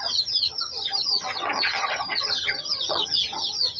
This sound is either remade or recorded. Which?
remade